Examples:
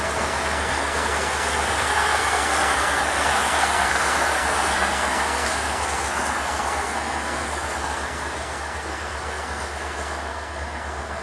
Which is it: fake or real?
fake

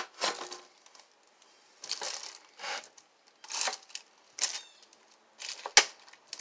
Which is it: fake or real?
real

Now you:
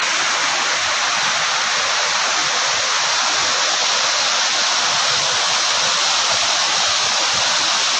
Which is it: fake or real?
real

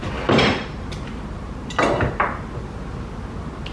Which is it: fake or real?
real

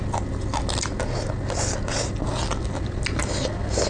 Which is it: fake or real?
real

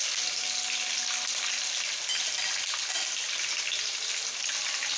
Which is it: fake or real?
real